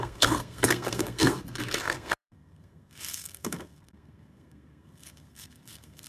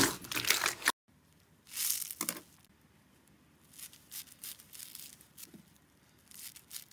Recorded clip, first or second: second